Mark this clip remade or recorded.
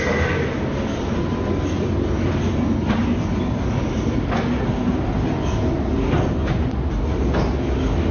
recorded